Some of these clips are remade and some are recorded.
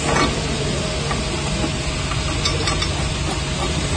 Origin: recorded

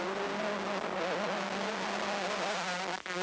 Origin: recorded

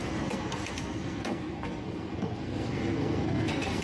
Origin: remade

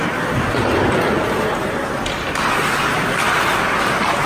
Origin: recorded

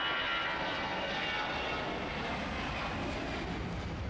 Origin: recorded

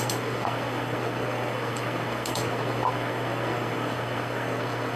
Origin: remade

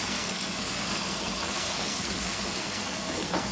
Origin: remade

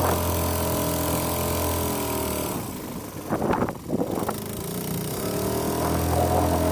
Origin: recorded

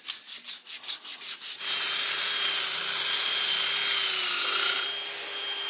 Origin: recorded